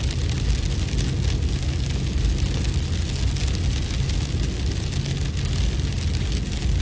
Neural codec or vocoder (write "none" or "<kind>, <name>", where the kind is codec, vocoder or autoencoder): none